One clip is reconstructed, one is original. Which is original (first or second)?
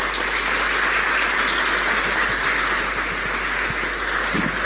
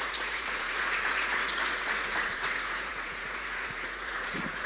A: first